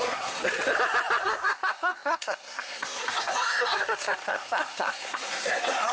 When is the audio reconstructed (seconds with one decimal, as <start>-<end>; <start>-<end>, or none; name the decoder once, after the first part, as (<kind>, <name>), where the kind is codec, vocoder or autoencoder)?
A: 0.0-0.4 (codec, SNAC); 1.2-5.9

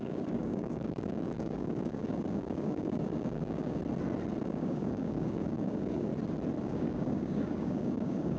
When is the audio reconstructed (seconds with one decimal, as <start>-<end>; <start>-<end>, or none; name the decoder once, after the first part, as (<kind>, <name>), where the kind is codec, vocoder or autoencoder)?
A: 0.0-3.8 (codec, DAC); 4.4-6.1; 6.6-8.4

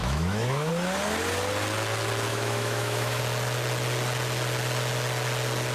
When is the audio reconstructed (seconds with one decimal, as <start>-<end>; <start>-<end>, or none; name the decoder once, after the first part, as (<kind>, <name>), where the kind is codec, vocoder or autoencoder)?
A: 0.0-0.7 (autoencoder, DAC-VAE); 2.3-3.2

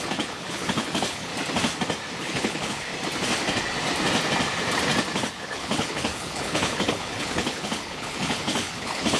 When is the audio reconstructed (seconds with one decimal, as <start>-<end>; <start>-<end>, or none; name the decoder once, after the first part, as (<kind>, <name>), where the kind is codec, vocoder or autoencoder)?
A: 0.0-1.3 (codec, HILCodec); 2.2-2.9; 5.3-9.2

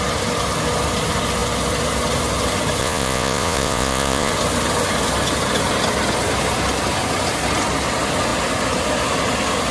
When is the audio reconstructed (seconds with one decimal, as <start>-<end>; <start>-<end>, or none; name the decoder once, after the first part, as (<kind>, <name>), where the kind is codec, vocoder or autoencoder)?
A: 2.8-4.3 (vocoder, Vocos)

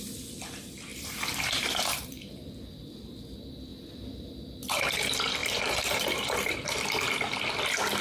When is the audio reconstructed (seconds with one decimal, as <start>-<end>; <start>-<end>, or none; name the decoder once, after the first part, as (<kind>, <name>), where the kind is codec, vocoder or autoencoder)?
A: 0.9-2.5 (vocoder, BigVGAN v2); 3.7-4.3; 5.4-6.5

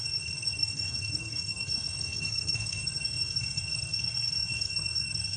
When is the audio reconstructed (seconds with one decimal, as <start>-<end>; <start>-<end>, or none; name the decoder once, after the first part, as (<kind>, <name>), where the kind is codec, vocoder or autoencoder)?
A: 0.0-5.4 (codec, SNAC)